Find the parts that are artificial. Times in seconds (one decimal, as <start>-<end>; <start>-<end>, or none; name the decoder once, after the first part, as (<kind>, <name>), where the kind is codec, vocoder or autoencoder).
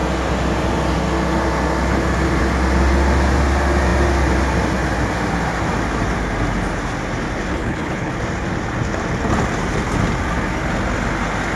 7.5-8.1 (codec, HILCodec)